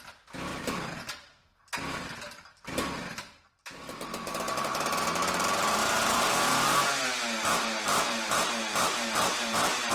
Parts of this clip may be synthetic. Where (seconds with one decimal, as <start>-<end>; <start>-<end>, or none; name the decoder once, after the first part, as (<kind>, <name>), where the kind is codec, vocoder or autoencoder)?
5.8-9.9 (vocoder, BigVGAN v2)